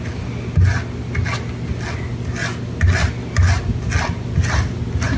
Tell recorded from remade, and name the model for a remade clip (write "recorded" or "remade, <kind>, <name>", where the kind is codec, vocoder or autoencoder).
recorded